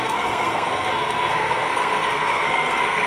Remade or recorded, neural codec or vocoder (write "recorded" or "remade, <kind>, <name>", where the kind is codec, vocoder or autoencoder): remade, codec, SNAC